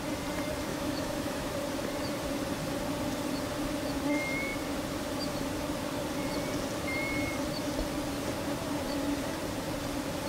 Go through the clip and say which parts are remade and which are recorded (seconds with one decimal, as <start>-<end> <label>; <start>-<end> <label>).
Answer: 0.0-0.7 recorded; 0.7-1.5 remade; 1.5-10.3 recorded